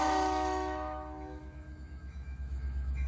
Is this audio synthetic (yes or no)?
yes